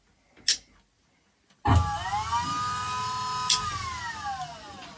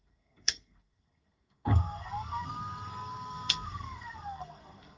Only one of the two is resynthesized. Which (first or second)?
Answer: second